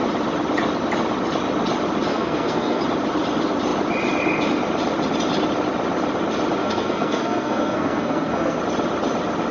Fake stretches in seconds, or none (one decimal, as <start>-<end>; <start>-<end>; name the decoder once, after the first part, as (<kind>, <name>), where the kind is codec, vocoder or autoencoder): 2.1-2.8 (codec, SNAC); 6.6-8.6